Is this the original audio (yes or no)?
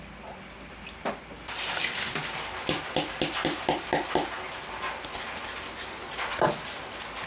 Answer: yes